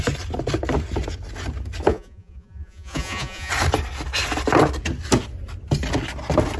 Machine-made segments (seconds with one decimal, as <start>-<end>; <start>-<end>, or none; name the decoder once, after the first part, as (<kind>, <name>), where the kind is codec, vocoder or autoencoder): 1.9-3.5 (vocoder, Vocos)